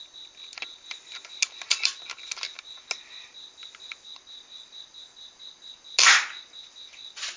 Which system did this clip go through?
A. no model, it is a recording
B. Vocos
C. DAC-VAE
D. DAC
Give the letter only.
A